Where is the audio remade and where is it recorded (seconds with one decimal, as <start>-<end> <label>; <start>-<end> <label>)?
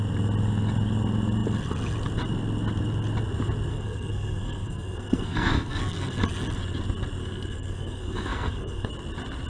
0.0-3.7 recorded; 3.7-6.2 remade; 6.2-7.2 recorded; 7.2-8.9 remade; 8.9-9.5 recorded